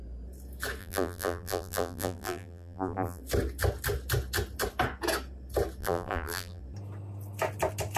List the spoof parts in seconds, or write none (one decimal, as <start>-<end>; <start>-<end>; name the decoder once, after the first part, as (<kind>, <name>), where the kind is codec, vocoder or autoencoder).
0.8-3.2 (vocoder, BigVGAN v2); 5.8-6.6